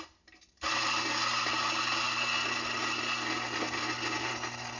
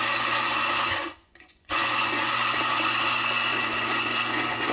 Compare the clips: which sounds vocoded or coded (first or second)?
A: second